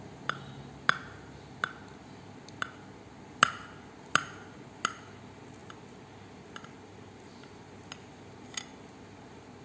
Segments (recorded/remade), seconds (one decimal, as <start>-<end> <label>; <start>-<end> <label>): 0.0-9.6 recorded